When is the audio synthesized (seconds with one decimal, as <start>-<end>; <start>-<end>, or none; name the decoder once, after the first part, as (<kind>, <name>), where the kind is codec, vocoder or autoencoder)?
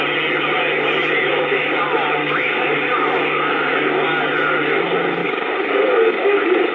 1.3-1.8 (codec, DAC); 2.2-4.2; 5.2-6.7